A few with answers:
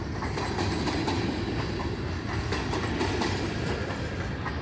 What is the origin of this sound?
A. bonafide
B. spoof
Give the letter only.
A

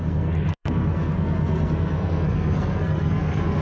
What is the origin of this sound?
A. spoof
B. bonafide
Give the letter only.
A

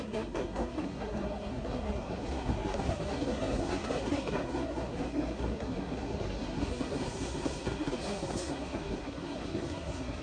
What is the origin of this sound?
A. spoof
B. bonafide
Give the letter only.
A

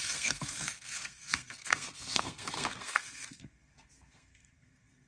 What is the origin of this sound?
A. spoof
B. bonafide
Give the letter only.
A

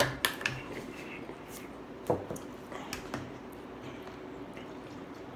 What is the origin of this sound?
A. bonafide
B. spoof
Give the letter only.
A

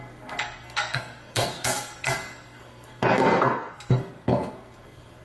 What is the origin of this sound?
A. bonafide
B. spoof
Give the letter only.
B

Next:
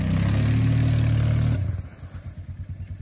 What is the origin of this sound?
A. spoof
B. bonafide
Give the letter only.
B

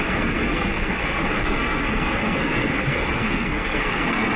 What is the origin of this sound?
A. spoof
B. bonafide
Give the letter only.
A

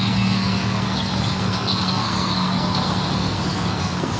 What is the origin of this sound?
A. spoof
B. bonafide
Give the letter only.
A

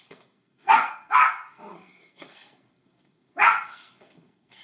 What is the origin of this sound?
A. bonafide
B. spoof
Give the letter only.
B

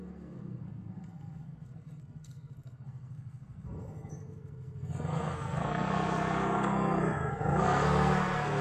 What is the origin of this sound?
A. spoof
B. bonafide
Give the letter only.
A